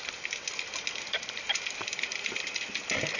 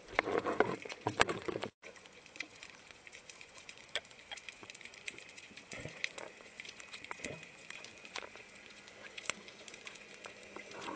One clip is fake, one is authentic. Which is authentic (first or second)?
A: first